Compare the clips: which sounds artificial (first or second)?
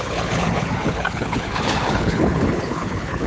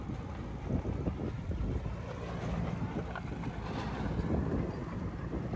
first